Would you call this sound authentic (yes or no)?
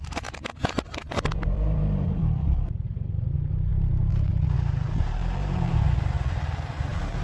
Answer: no